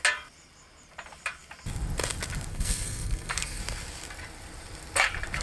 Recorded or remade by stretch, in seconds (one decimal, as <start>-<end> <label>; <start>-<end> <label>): 0.0-2.5 recorded; 2.5-3.6 remade; 3.6-5.4 recorded